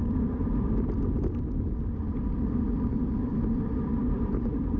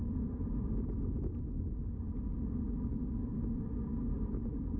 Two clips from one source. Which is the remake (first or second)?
first